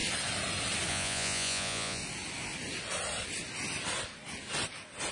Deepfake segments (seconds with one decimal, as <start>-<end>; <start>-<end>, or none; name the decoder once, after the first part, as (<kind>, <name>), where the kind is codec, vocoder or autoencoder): 0.9-2.0 (vocoder, Vocos)